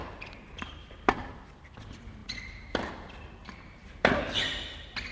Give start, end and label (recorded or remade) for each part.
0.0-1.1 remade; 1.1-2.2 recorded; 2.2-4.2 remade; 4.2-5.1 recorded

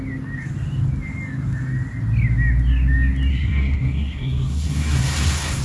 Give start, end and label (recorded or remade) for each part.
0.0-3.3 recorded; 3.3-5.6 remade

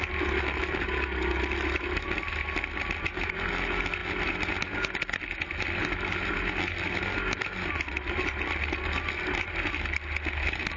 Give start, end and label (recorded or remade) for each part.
0.0-10.8 recorded

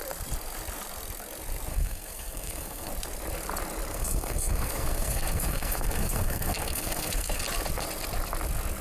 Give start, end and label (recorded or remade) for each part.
0.0-1.7 recorded; 1.7-2.9 remade; 2.9-3.9 recorded; 3.9-7.4 remade; 7.4-8.8 recorded

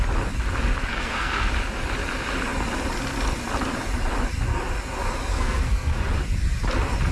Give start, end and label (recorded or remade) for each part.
0.0-0.9 recorded; 0.9-1.5 remade; 1.5-5.3 recorded; 5.3-6.0 remade; 6.0-7.1 recorded

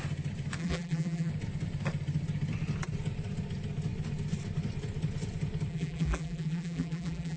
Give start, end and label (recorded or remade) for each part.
0.0-0.6 recorded; 0.6-1.3 remade; 1.3-5.7 recorded; 5.7-7.4 remade